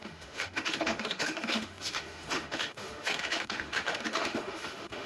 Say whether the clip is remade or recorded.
remade